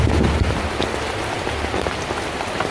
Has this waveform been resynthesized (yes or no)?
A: no